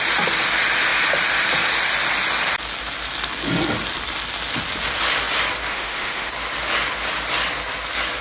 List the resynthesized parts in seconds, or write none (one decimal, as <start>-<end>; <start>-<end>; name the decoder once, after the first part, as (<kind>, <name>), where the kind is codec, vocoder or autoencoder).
5.7-6.3 (autoencoder, DAC-VAE)